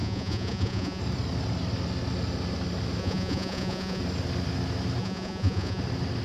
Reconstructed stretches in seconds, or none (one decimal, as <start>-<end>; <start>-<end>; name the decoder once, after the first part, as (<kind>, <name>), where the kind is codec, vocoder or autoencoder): 0.0-1.0 (vocoder, Vocos); 3.0-4.0; 5.0-5.8